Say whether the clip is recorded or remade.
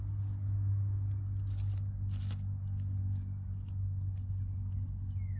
recorded